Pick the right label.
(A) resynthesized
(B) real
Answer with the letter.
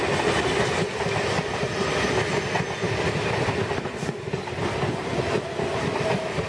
B